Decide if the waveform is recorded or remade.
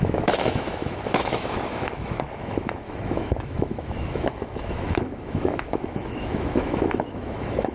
remade